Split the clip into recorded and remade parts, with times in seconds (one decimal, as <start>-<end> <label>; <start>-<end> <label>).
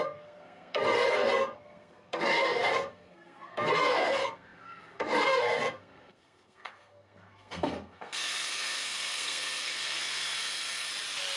0.0-10.9 remade; 10.9-11.4 recorded